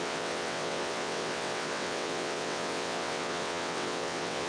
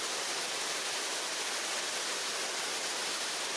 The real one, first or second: second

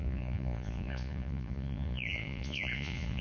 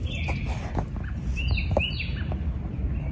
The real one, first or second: second